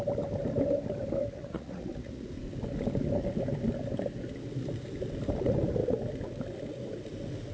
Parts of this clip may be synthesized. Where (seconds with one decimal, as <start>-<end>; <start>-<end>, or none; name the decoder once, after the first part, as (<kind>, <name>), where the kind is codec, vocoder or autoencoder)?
1.2-2.3 (vocoder, Vocos)